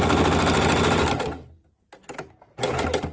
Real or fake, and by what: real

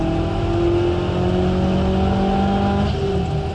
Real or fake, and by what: real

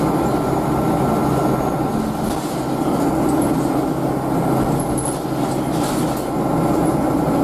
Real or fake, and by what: real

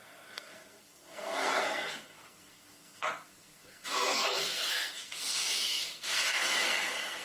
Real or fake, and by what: fake, codec, SNAC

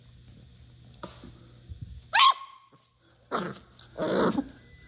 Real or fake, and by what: real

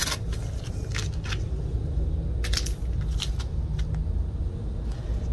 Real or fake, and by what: real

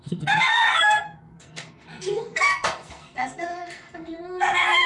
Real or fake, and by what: fake, codec, SNAC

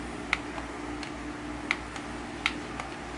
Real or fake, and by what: real